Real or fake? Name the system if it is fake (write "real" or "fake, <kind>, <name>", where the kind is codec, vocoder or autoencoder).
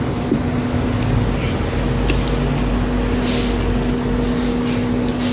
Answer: real